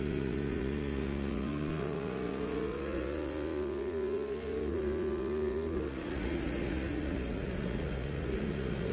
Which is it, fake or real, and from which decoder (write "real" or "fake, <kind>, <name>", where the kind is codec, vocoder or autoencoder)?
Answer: fake, vocoder, Vocos